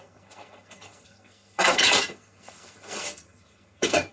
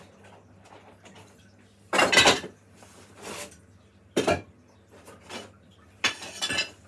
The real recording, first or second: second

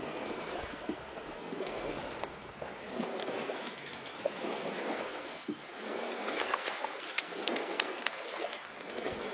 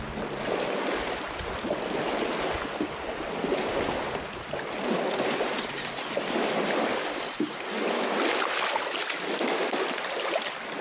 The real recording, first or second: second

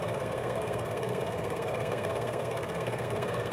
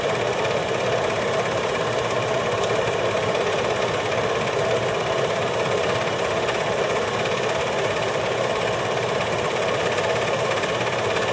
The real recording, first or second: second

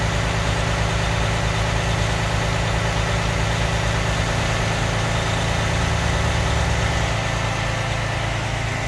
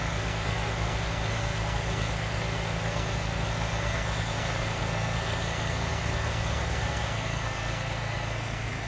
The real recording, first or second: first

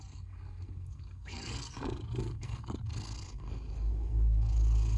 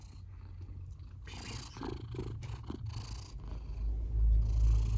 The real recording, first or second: second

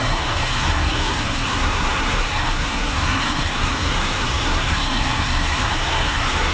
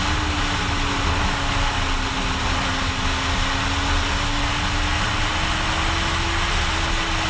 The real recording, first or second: second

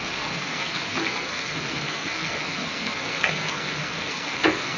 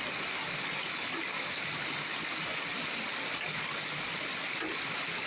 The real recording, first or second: second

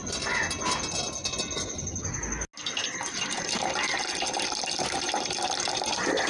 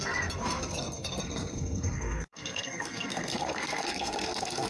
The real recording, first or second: first